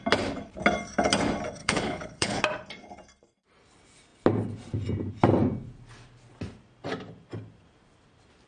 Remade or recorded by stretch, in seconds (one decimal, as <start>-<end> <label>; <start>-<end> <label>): 0.0-1.6 recorded; 1.6-2.4 remade; 2.4-8.5 recorded